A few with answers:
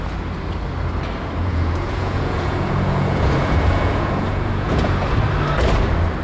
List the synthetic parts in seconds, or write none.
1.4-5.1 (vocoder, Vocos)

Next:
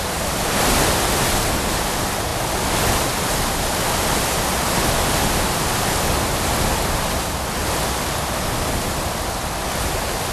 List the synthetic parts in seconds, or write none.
none

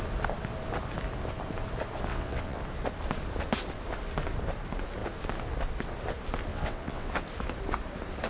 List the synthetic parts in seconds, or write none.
2.1-2.6 (vocoder, WaveNeXt); 6.5-7.1

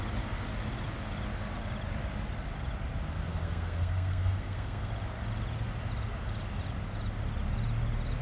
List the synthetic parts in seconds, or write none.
3.3-4.9 (codec, SNAC)

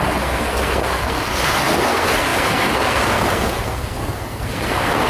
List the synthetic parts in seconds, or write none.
0.0-5.1 (codec, SNAC)

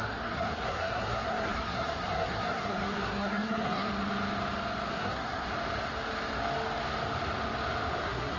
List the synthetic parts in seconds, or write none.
0.0-3.9 (codec, SNAC); 4.9-5.5; 8.0-8.4

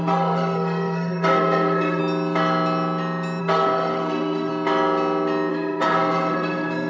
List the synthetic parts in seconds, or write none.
0.0-2.0 (codec, SNAC); 3.4-4.5; 5.5-6.9